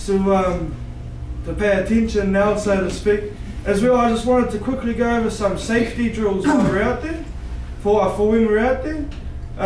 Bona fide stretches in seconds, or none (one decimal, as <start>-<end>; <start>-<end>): 0.0-9.7